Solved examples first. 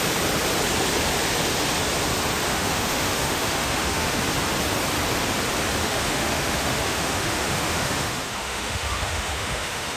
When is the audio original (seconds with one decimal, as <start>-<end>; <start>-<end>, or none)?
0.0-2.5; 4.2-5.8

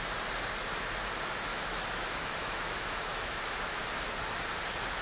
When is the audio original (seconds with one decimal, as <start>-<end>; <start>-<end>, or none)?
0.0-1.5; 3.8-5.0

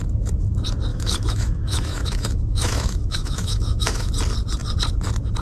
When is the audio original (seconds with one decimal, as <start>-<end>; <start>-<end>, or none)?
0.0-0.9; 4.1-5.4

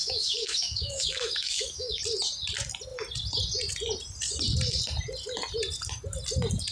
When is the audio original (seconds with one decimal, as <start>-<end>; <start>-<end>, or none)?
2.0-6.7